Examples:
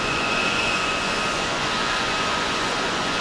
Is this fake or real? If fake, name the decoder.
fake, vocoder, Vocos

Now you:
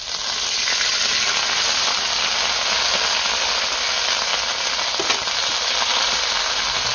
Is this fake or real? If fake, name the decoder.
real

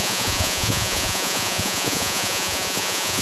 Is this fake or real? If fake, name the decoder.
fake, vocoder, Vocos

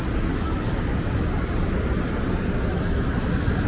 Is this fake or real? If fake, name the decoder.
real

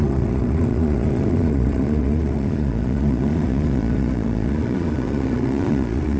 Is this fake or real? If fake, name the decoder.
fake, vocoder, Vocos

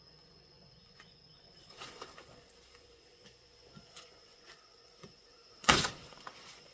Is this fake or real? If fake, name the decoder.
fake, vocoder, Vocos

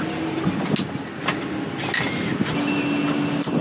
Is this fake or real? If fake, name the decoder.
real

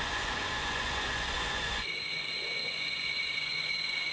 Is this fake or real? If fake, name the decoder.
fake, vocoder, Vocos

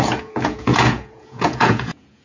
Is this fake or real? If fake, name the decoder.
fake, vocoder, Vocos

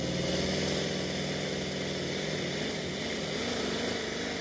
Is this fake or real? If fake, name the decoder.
real